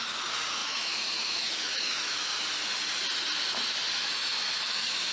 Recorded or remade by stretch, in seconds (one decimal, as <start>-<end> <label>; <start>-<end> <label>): 0.0-2.3 remade; 2.3-4.0 recorded; 4.0-5.1 remade